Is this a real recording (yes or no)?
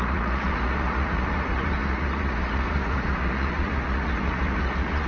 no